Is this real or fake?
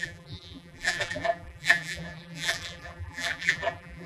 fake